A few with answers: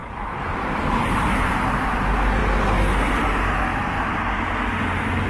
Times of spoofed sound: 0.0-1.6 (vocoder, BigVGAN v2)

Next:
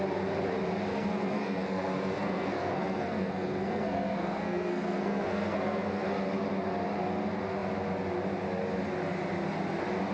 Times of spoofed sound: 0.9-6.1 (codec, SNAC)

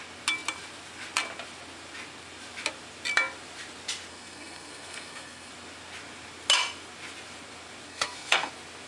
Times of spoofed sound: 4.1-5.5 (codec, SNAC); 7.9-8.5

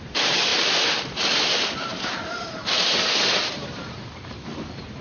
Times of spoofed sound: 0.0-5.0 (vocoder, BigVGAN v2)

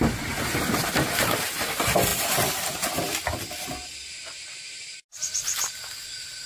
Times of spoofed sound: none

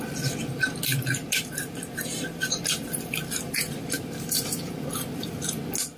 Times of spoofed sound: 1.2-4.8 (vocoder, BigVGAN v2)

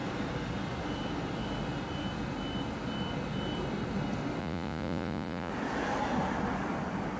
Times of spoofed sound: 4.4-5.5 (vocoder, Vocos)